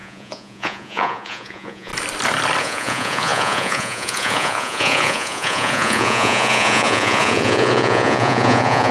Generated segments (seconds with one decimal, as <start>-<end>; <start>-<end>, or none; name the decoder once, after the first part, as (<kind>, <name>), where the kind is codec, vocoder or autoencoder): 0.0-1.9 (vocoder, Vocos); 2.6-8.9